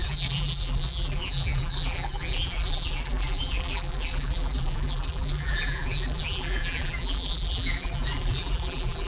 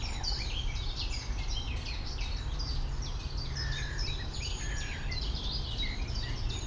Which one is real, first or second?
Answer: second